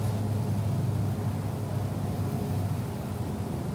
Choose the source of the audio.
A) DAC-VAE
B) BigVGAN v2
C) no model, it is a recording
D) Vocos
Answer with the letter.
C